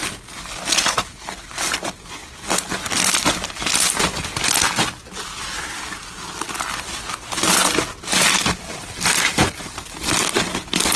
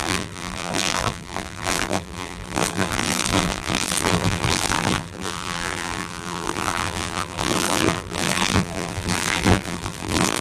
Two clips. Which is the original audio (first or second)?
first